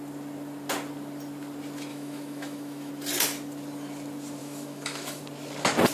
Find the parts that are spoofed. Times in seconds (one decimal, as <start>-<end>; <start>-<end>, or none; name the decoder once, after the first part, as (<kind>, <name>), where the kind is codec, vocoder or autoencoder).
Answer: 1.9-2.9 (autoencoder, DAC-VAE); 4.4-5.2